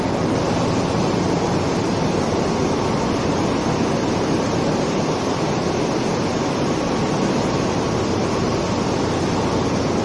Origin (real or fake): real